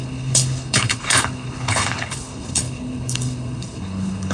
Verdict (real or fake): fake